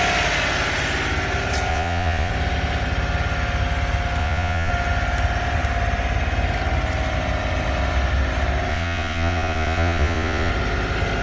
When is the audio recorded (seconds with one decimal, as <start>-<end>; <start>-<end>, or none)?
0.0-1.7; 2.3-4.2; 4.7-8.7; 10.5-11.2